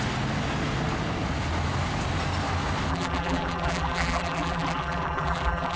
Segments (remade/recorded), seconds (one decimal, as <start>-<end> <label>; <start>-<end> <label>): 0.0-2.9 recorded; 2.9-5.8 remade